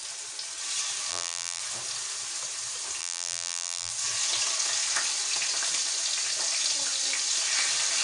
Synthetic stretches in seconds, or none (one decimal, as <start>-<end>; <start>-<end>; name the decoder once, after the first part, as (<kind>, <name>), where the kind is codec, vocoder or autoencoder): 1.1-1.6 (vocoder, BigVGAN v2); 3.0-3.9

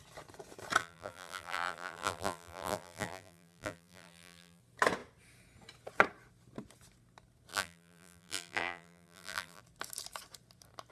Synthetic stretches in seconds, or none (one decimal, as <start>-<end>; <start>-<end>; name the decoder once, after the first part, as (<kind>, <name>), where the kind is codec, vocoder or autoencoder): 0.8-4.6 (vocoder, BigVGAN v2); 7.5-9.6

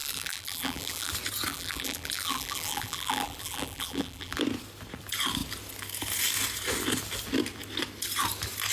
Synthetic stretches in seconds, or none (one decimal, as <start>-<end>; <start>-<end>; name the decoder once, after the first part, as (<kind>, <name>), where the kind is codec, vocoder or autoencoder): 0.0-1.1 (vocoder, BigVGAN v2); 1.5-4.4